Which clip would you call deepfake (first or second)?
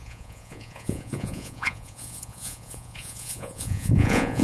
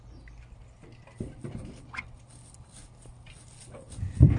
first